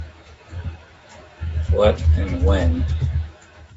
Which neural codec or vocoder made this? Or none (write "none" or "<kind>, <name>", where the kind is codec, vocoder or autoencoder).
autoencoder, DAC-VAE